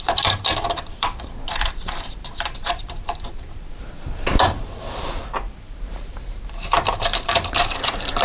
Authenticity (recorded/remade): remade